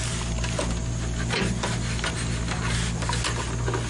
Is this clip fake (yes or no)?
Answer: no